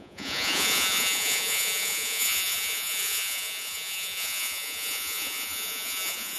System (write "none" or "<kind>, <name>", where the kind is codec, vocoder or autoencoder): vocoder, Vocos